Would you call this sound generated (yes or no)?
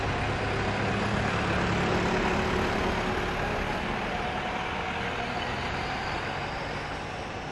no